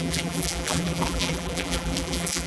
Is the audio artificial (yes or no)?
yes